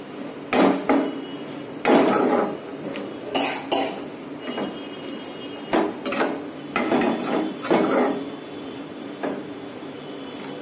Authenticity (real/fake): real